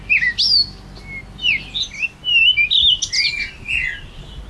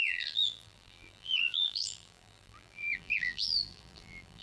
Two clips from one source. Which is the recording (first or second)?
first